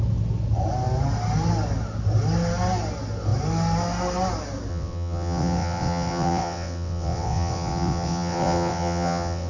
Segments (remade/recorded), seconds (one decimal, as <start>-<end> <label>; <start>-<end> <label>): 0.0-4.7 recorded; 4.7-9.5 remade